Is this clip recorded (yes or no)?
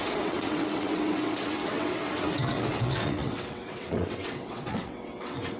no